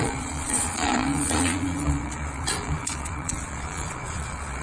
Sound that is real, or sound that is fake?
fake